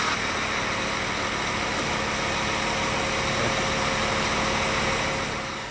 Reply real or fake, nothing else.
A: real